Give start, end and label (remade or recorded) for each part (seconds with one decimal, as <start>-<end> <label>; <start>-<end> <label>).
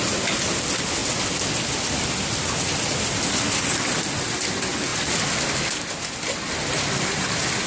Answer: 0.0-7.7 recorded